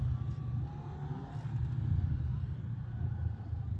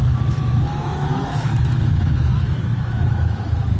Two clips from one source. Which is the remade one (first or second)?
second